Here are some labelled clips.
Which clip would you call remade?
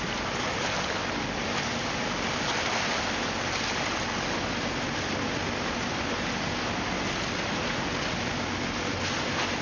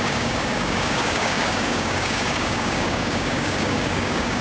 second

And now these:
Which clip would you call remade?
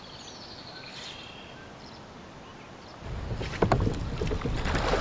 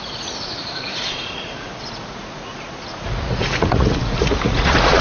second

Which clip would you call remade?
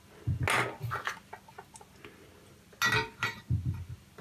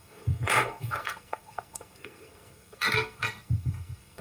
second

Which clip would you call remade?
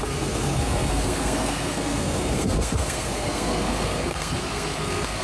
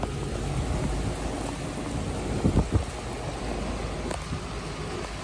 first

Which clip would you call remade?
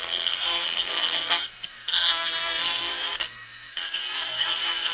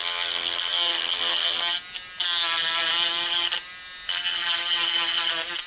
first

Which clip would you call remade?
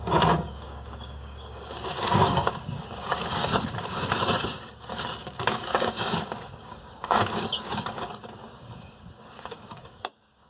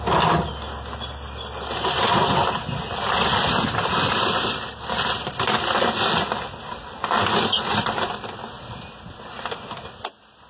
first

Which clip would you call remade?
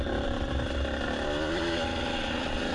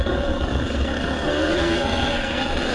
second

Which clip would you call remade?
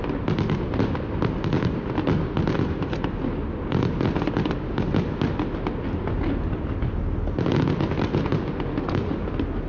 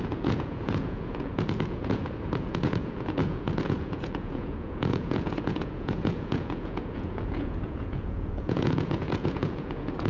second